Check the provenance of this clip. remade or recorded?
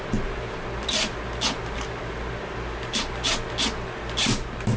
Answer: recorded